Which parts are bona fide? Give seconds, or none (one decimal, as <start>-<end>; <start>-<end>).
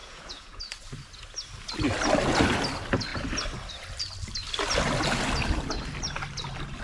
0.6-6.8